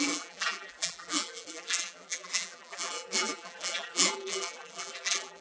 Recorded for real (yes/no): no